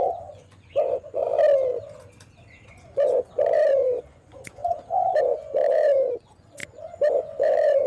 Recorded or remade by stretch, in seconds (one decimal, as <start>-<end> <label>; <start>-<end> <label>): 0.0-1.2 remade; 1.2-2.7 recorded; 2.7-7.9 remade